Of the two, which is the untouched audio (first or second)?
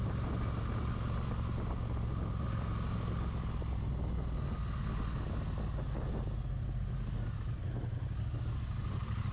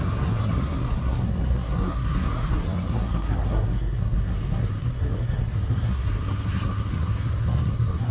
first